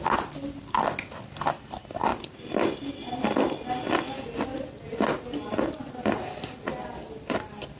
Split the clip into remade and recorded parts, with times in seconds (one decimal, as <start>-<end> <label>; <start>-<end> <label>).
0.0-7.8 recorded